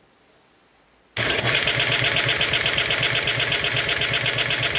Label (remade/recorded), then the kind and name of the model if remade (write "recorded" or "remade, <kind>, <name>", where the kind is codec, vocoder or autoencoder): recorded